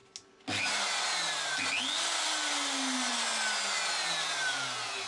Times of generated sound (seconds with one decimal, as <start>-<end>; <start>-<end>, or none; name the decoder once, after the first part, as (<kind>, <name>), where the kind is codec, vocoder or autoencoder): none